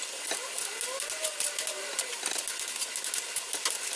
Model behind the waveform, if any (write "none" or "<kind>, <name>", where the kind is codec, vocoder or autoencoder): none